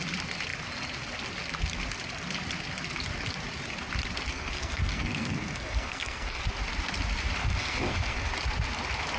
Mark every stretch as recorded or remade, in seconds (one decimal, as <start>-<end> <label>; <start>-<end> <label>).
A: 0.0-4.3 recorded; 4.3-6.4 remade; 6.4-7.4 recorded; 7.4-8.3 remade; 8.3-9.2 recorded